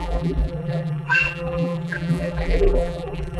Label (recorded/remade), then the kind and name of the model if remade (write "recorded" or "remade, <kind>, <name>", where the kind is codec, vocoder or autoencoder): remade, vocoder, BigVGAN v2